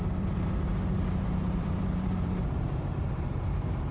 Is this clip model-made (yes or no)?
yes